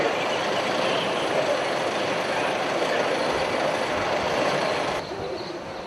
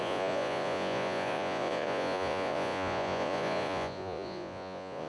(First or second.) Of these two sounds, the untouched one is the first